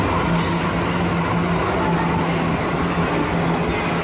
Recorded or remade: recorded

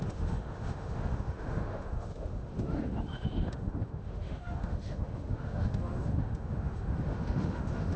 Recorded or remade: remade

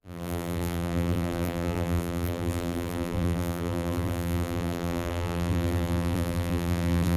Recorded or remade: remade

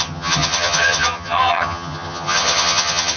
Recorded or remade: remade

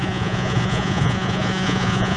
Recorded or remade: remade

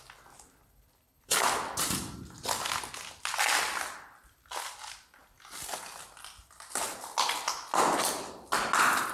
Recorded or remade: recorded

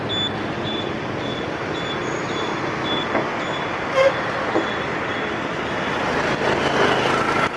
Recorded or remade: recorded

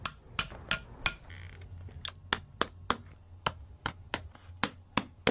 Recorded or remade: recorded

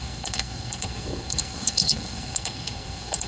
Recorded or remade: remade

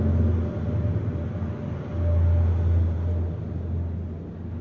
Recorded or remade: recorded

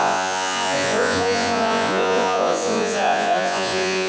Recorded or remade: remade